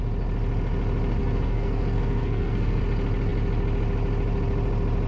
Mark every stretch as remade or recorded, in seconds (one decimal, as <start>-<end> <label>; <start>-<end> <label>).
0.0-1.2 recorded; 1.2-2.8 remade; 2.8-5.1 recorded